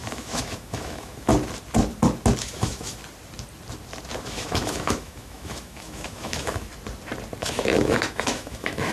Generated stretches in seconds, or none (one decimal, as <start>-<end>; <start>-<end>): 0.0-1.3; 2.4-3.0; 4.2-6.7; 7.4-8.9